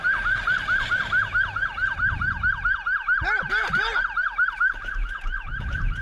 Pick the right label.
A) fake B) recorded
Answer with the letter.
B